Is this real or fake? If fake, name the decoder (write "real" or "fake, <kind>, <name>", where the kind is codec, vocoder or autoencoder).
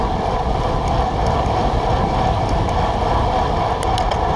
real